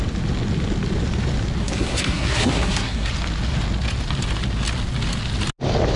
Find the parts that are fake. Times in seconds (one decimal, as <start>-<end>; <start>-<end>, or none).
1.6-3.1